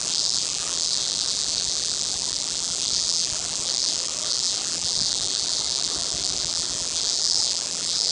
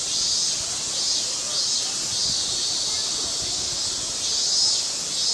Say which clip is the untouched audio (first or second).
second